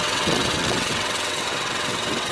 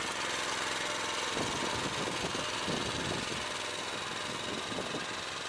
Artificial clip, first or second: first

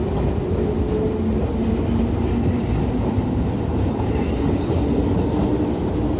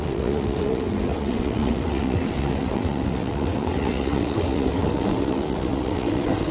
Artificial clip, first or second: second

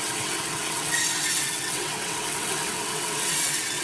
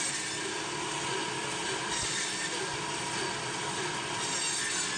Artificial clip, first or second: first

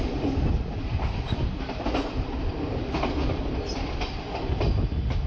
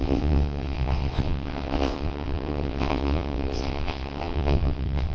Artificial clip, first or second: second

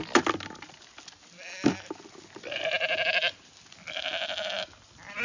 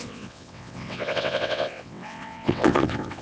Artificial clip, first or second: second